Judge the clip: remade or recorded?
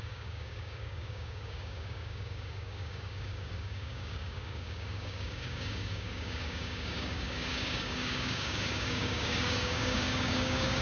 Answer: remade